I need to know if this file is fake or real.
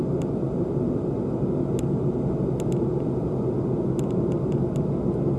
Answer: real